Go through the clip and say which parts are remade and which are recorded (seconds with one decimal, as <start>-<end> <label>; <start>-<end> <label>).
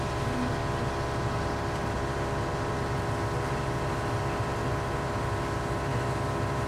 0.0-6.7 recorded